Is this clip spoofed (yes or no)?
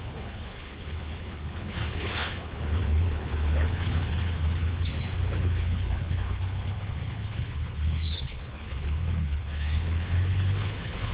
yes